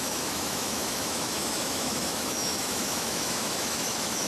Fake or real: fake